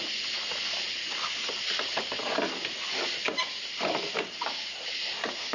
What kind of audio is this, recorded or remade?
recorded